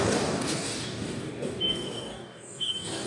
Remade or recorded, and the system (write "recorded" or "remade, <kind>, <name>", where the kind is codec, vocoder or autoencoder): remade, codec, DAC